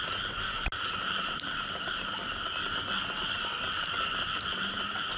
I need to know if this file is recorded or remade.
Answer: recorded